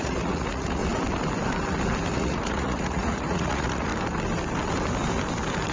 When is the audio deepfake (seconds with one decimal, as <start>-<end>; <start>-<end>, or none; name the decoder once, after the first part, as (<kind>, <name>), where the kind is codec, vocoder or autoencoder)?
0.0-0.8 (vocoder, Vocos); 2.1-3.9